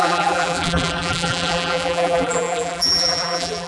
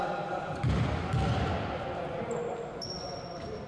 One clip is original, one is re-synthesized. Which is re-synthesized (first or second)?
first